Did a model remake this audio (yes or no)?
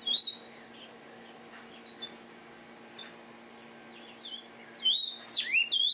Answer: no